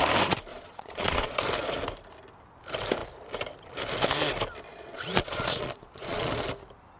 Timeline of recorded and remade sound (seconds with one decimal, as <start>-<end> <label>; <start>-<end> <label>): 0.0-0.5 recorded; 0.5-1.4 remade; 1.4-4.7 recorded; 4.7-6.3 remade; 6.3-7.0 recorded